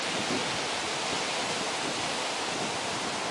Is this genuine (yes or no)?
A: yes